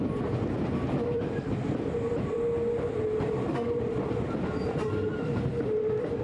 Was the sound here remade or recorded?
remade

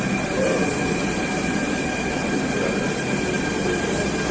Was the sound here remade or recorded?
recorded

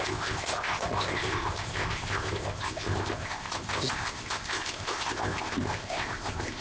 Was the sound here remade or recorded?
remade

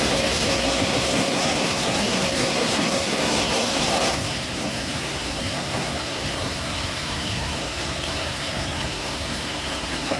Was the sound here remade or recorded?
remade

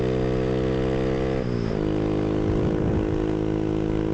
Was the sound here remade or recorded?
recorded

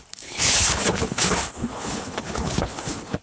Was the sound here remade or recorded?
remade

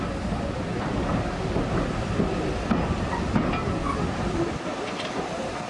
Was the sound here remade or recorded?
recorded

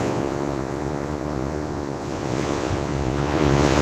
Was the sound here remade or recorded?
remade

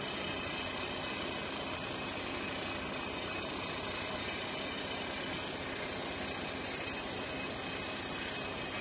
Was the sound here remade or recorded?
recorded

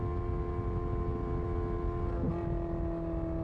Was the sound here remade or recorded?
recorded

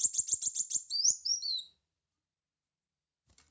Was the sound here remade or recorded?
remade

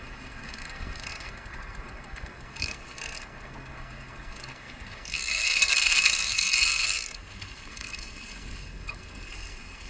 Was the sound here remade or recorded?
remade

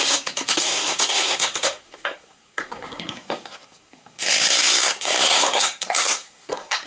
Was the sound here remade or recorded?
remade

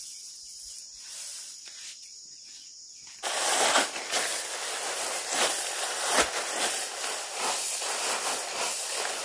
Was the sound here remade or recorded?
recorded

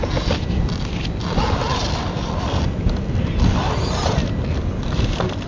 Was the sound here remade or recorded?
recorded